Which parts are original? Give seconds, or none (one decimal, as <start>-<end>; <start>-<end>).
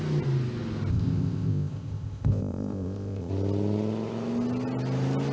0.0-0.9; 3.3-5.3